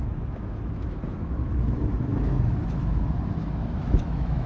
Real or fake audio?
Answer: fake